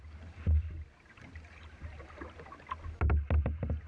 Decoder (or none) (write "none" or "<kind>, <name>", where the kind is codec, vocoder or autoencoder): none